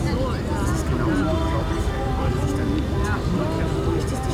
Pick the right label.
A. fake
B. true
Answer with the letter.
B